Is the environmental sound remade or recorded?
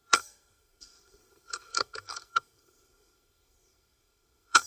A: remade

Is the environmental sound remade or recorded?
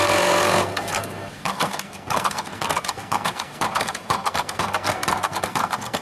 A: remade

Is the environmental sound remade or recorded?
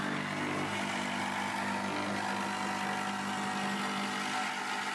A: recorded